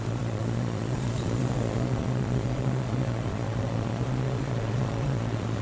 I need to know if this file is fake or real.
fake